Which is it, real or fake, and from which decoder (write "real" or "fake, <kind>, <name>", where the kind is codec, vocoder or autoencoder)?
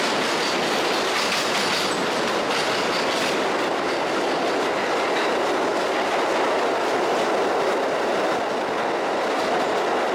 real